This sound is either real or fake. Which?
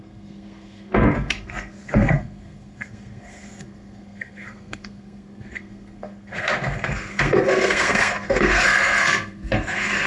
fake